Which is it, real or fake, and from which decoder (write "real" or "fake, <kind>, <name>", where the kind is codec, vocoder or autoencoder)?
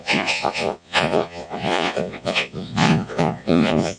fake, vocoder, Vocos